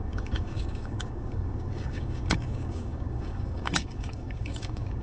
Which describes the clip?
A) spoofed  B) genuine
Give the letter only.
A